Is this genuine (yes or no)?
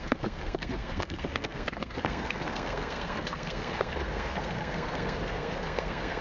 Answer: no